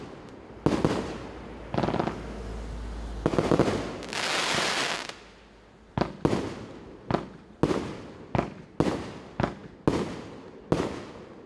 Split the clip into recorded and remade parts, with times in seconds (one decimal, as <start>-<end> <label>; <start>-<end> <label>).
0.0-11.5 recorded